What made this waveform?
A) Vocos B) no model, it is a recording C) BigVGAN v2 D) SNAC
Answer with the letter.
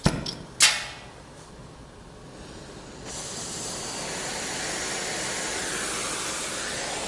B